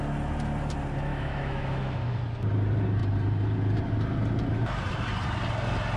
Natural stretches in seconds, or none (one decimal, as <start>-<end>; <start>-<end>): 0.0-1.1; 2.2-6.0